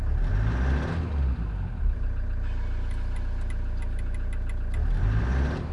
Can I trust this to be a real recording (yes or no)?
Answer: yes